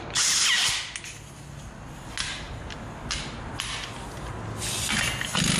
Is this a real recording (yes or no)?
yes